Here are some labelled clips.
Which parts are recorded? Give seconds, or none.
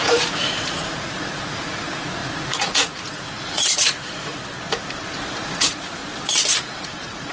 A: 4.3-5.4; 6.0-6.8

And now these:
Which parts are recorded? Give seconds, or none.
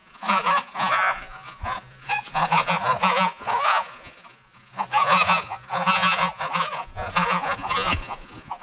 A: none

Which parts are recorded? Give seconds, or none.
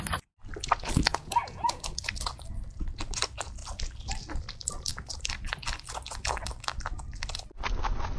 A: 0.0-1.1; 1.8-8.2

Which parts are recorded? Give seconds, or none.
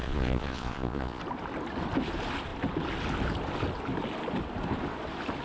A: 1.2-5.4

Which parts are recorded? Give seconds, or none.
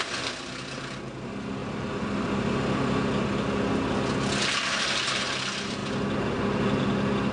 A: 0.0-7.3